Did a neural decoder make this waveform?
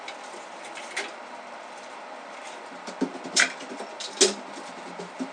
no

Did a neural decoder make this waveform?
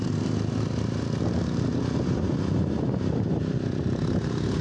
no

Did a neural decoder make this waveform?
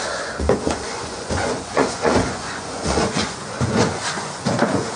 yes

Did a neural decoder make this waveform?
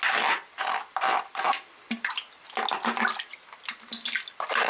no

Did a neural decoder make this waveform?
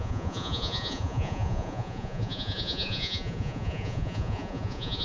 yes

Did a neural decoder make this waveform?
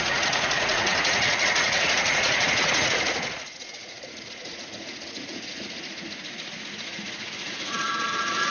yes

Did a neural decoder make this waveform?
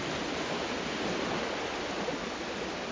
no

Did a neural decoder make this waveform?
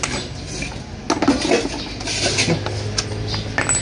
no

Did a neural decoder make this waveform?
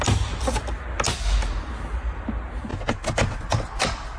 no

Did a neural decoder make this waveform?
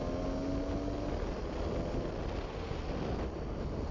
no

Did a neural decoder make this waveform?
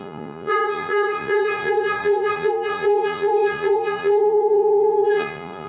yes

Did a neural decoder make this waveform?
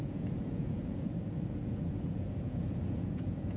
yes